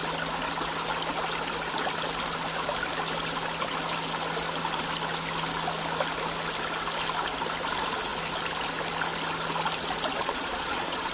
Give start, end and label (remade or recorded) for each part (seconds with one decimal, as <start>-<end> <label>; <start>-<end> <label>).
0.0-10.2 recorded; 10.2-11.1 remade